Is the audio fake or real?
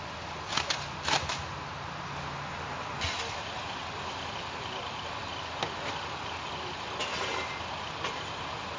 real